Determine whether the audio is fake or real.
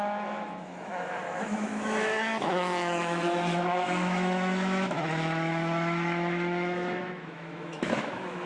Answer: fake